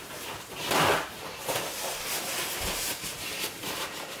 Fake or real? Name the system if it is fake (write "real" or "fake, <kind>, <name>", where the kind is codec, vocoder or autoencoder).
fake, vocoder, BigVGAN v2